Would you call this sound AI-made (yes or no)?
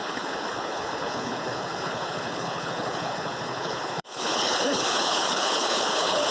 yes